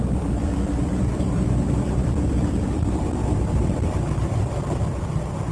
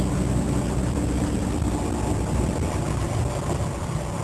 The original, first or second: second